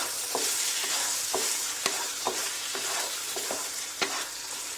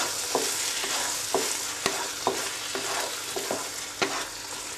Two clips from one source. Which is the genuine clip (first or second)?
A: second